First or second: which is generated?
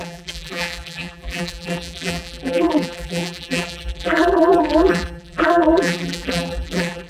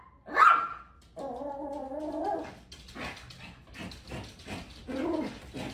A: first